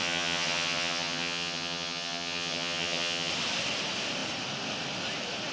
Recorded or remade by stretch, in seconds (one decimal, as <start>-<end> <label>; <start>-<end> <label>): 0.0-3.3 remade; 3.3-5.5 recorded